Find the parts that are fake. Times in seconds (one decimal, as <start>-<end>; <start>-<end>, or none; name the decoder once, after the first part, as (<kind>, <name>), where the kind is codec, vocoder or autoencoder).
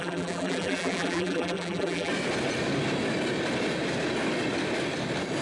0.0-2.1 (vocoder, BigVGAN v2)